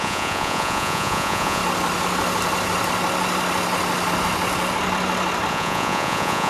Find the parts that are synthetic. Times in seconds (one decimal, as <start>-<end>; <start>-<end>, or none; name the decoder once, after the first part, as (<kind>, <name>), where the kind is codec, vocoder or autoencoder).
0.0-1.6 (vocoder, Vocos); 5.5-6.5